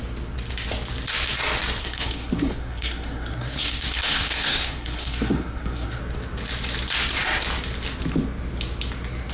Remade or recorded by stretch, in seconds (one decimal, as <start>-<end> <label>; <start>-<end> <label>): 0.0-1.8 recorded; 1.8-6.0 remade; 6.0-9.3 recorded